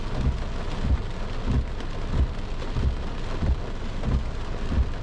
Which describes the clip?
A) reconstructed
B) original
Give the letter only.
B